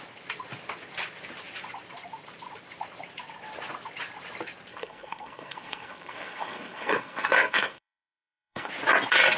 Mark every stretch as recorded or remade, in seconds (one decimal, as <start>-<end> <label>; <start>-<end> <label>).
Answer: 0.0-4.7 recorded; 4.7-8.7 remade; 8.7-9.4 recorded